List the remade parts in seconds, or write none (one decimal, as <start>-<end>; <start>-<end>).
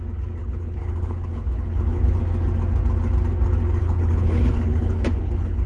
0.4-2.2; 3.8-5.7